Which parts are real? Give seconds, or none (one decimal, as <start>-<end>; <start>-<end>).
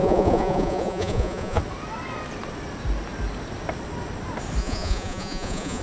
1.6-4.6